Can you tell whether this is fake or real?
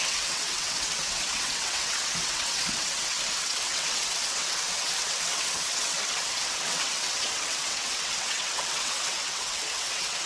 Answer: fake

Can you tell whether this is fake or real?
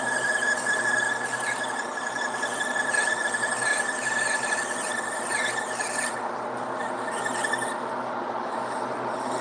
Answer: real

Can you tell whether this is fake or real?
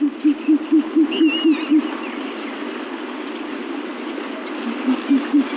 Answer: real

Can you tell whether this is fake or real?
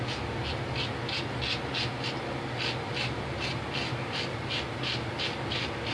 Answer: real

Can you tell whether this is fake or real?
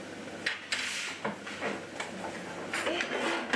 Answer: real